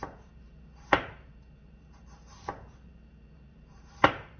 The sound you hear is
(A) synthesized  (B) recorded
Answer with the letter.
A